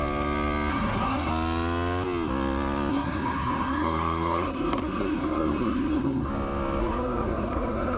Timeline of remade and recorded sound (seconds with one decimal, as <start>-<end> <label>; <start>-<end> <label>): 0.0-0.7 recorded; 0.7-1.3 remade; 1.3-2.9 recorded; 2.9-6.3 remade; 6.3-6.8 recorded; 6.8-8.0 remade